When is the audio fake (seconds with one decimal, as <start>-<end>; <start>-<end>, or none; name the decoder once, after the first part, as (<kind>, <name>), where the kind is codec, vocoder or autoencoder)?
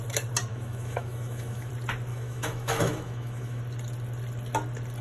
0.5-1.7 (autoencoder, DAC-VAE); 2.1-3.6